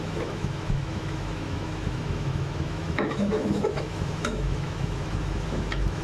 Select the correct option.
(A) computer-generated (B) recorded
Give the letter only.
A